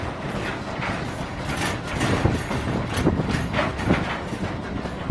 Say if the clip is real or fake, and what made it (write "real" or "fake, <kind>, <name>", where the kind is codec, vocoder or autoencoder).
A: real